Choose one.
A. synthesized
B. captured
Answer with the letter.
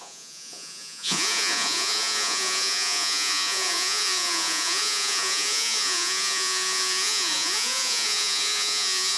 A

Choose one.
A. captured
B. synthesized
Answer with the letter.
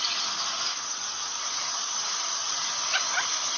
B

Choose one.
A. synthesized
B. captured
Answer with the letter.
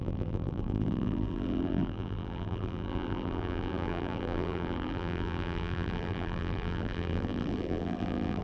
A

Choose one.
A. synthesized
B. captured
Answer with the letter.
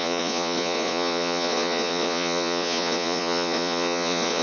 A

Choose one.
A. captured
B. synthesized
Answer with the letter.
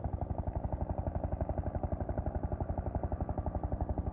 B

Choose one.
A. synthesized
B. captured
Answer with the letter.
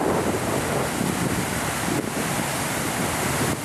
B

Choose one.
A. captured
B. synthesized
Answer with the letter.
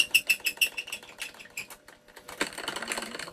A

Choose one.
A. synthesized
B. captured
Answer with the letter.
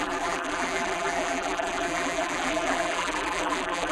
A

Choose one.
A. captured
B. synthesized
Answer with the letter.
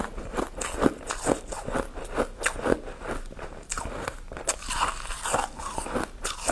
A